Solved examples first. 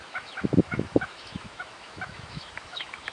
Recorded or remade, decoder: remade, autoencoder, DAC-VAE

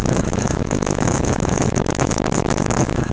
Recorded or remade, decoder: remade, autoencoder, DAC-VAE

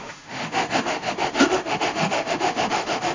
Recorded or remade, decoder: remade, autoencoder, DAC-VAE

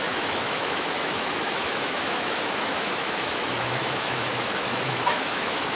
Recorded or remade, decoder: remade, autoencoder, DAC-VAE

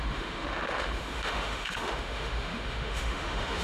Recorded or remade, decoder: remade, autoencoder, DAC-VAE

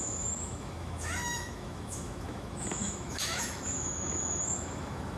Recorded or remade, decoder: remade, autoencoder, DAC-VAE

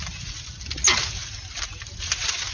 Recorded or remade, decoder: recorded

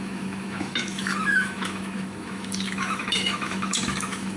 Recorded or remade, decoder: remade, autoencoder, DAC-VAE